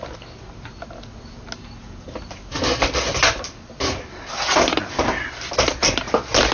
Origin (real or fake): real